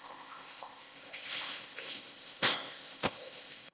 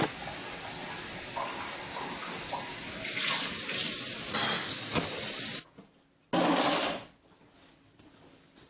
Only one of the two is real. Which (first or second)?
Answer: second